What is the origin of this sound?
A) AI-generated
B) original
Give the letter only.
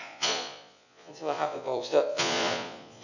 A